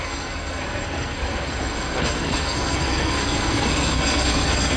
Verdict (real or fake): fake